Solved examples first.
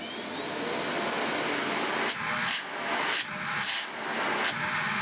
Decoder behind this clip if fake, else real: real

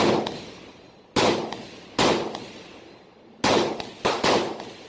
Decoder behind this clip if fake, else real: real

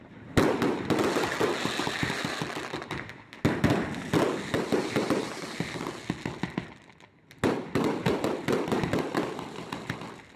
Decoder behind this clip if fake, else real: real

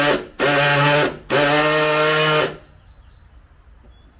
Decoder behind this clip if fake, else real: real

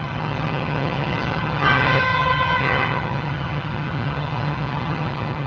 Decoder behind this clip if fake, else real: fake, vocoder, HiFi-GAN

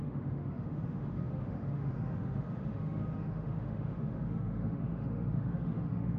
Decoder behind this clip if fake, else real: fake, autoencoder, DAC-VAE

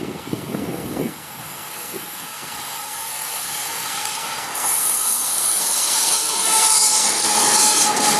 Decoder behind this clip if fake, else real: fake, codec, SNAC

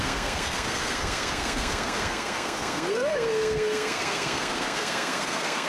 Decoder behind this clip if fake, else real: fake, codec, SNAC